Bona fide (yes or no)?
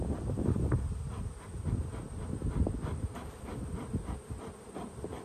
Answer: yes